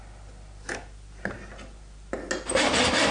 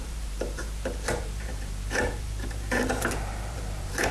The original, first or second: first